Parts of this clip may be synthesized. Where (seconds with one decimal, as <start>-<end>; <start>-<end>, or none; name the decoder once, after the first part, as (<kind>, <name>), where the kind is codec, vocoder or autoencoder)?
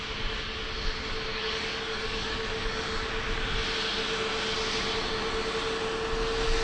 1.3-2.7 (codec, DAC)